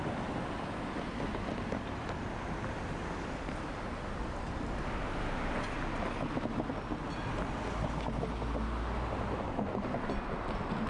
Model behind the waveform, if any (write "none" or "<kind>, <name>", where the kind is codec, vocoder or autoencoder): none